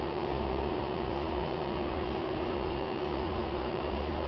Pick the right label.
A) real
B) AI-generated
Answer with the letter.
B